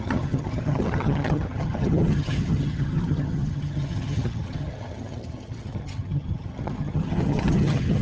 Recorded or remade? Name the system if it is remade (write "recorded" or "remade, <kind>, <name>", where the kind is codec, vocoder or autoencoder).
remade, vocoder, HiFi-GAN